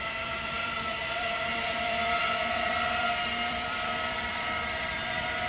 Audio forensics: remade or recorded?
remade